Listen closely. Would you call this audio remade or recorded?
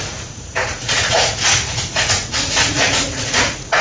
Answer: remade